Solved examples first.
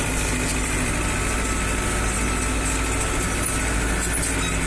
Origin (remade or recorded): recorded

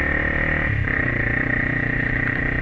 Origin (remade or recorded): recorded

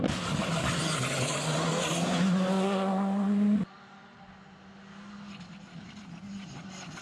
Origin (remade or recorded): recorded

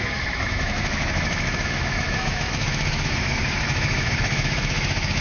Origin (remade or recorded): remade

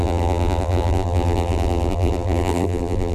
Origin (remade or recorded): remade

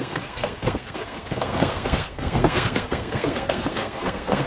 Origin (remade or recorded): remade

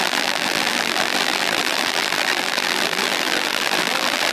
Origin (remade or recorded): remade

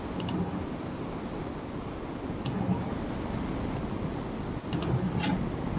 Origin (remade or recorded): recorded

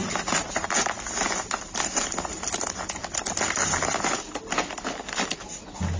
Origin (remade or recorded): recorded